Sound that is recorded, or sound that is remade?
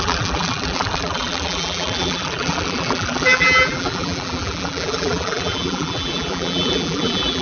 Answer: remade